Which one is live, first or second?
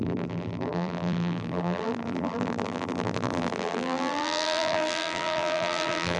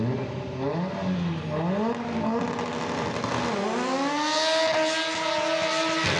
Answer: second